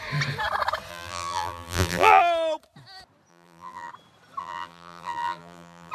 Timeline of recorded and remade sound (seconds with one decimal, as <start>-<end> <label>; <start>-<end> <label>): 0.0-0.9 recorded; 0.9-2.2 remade; 2.2-3.3 recorded; 3.3-3.9 remade; 3.9-4.4 recorded; 4.4-5.9 remade